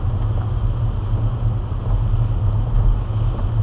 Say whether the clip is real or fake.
real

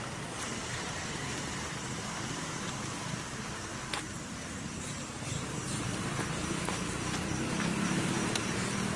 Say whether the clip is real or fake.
fake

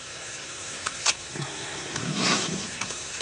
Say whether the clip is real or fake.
fake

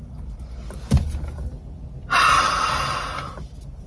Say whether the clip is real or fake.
real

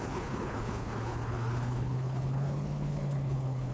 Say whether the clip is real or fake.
fake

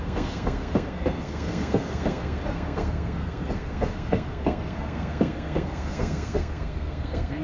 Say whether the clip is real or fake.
fake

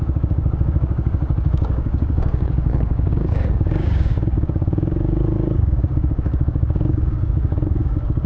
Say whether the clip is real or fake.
fake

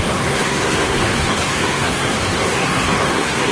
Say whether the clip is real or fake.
fake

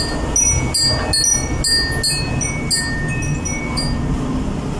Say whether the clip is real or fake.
real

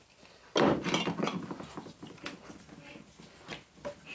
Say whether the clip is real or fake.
real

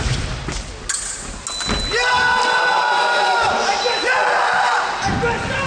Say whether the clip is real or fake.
real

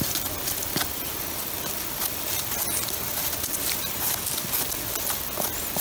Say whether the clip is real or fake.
real